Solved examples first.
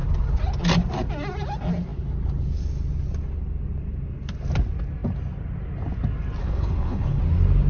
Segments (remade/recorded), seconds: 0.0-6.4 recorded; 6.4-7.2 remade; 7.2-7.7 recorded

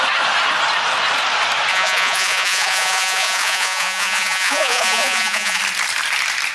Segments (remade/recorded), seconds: 0.0-1.7 recorded; 1.7-5.6 remade; 5.6-6.5 recorded